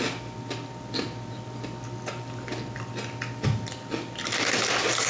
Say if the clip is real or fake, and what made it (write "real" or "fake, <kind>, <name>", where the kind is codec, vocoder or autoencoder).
real